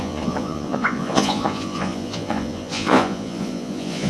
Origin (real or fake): fake